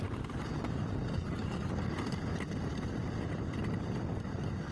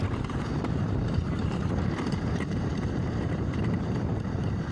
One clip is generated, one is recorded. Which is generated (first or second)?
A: second